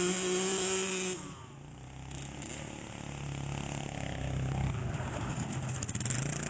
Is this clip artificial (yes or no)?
no